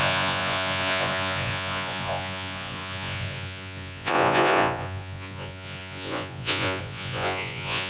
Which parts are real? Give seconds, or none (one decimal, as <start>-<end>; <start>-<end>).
none